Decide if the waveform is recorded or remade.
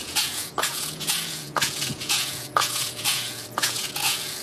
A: remade